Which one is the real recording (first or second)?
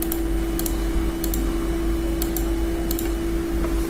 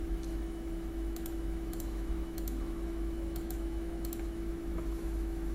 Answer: first